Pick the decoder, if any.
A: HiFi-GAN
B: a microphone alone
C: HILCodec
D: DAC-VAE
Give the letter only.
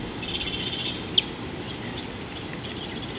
B